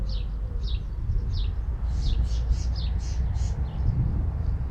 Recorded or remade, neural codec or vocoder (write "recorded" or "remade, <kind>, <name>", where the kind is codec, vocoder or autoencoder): remade, vocoder, BigVGAN v2